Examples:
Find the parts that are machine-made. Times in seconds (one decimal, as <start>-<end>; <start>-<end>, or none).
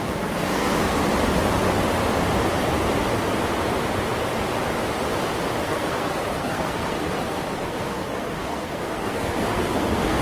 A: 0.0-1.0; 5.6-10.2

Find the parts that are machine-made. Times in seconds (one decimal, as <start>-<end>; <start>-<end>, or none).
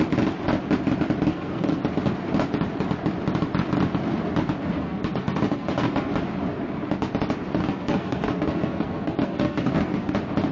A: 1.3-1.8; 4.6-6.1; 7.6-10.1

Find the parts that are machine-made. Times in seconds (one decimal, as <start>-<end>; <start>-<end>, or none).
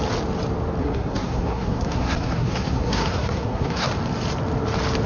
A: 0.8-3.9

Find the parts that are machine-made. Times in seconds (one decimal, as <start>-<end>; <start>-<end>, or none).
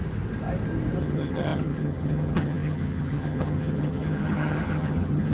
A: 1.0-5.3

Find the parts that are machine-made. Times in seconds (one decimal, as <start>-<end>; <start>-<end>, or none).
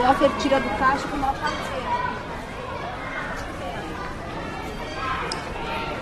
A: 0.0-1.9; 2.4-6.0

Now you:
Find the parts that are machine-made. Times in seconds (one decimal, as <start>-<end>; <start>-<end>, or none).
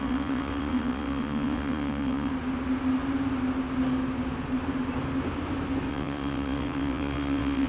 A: 0.0-2.3; 5.9-7.7